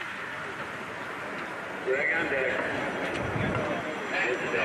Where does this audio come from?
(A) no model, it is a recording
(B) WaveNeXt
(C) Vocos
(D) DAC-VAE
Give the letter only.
A